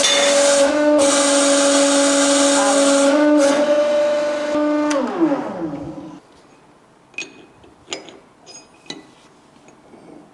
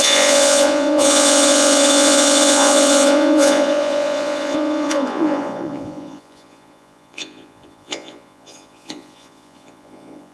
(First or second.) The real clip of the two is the first